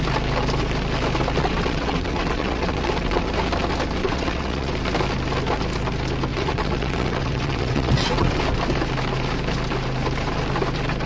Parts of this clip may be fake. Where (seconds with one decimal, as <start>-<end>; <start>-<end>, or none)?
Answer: 1.4-3.3; 4.0-4.7; 6.3-8.4

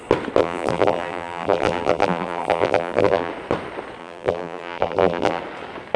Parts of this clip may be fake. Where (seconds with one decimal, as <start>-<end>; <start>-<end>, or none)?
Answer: 0.4-3.3; 4.0-5.4

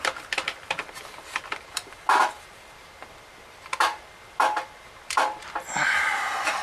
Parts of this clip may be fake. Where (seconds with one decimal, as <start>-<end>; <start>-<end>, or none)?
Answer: 0.0-6.6

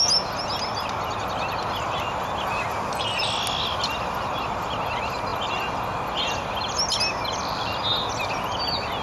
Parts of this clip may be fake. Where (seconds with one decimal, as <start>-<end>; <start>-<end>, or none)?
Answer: none

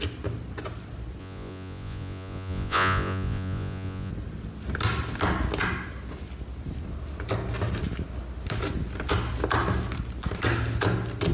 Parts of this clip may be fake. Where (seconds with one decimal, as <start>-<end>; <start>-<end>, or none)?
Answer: 1.2-4.1

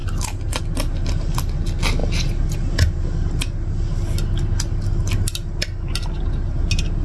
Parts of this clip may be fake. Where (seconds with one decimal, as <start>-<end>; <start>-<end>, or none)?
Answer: none

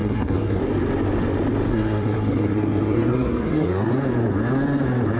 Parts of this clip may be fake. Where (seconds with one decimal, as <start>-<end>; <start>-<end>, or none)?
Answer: 0.0-0.6; 1.7-3.9